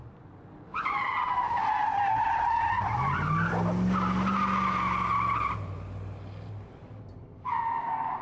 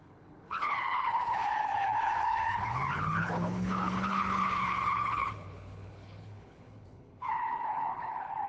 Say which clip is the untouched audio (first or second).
first